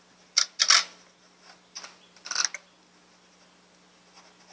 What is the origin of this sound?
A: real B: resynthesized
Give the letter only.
A